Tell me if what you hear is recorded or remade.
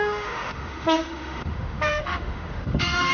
remade